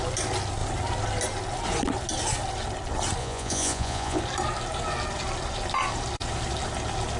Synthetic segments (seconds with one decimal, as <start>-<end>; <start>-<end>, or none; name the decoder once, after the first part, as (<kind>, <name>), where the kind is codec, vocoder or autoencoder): 3.2-4.2 (vocoder, Vocos)